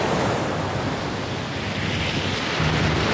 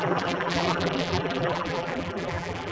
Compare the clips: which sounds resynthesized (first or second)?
second